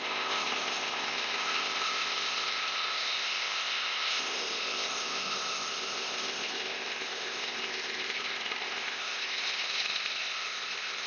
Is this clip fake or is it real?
fake